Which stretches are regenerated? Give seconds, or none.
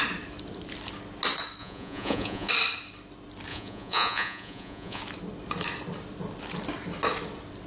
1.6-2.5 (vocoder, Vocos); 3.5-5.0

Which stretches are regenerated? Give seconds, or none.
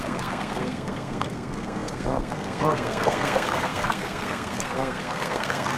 0.0-5.8 (codec, SNAC)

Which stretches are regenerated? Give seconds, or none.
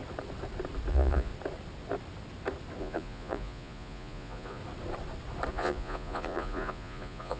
0.9-1.3 (vocoder, Vocos); 2.8-4.6; 5.5-7.4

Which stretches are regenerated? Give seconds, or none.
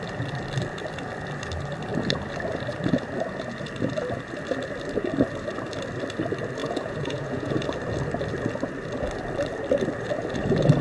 6.6-7.6 (vocoder, Vocos)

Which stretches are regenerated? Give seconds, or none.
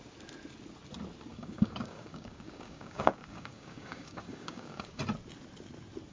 1.3-5.0 (codec, DAC)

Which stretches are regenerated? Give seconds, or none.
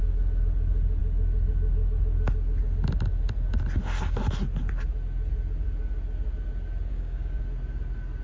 6.9-7.4 (codec, DAC)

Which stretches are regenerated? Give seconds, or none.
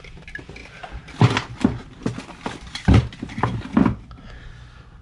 0.6-3.4 (vocoder, BigVGAN v2)